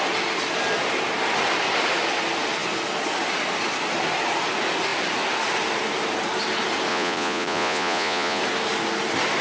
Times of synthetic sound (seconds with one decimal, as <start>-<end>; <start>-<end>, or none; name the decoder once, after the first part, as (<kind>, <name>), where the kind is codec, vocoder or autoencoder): 6.9-8.4 (vocoder, Vocos)